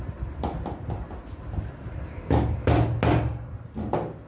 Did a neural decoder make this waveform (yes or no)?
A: no